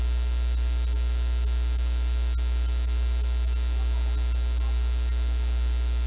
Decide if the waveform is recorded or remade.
recorded